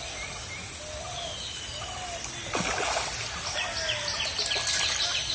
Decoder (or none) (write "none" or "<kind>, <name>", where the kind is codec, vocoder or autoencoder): none